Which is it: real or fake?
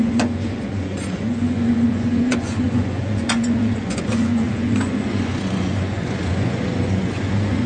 fake